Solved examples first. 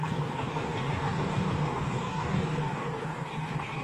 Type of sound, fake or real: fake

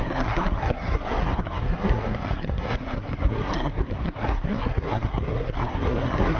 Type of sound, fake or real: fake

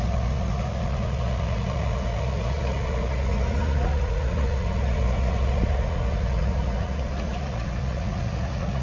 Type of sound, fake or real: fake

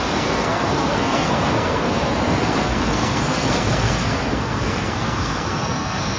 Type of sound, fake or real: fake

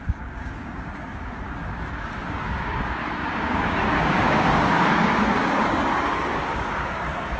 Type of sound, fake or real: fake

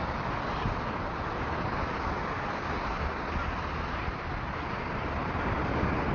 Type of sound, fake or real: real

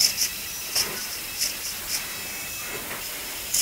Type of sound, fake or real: real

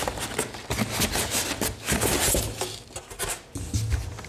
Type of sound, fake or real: real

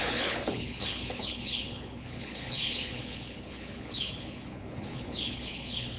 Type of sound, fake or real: fake